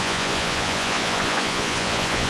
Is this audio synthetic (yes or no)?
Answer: yes